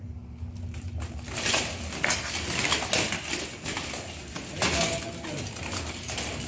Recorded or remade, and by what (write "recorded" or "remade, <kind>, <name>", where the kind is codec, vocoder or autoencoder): recorded